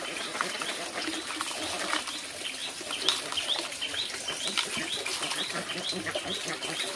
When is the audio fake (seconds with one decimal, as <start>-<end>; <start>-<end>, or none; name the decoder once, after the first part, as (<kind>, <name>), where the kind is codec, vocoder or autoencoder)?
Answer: none